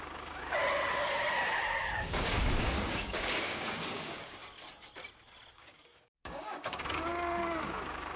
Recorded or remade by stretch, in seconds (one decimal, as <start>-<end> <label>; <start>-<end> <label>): 0.0-0.6 remade; 0.6-1.8 recorded; 1.8-4.4 remade; 4.4-5.5 recorded; 5.5-8.2 remade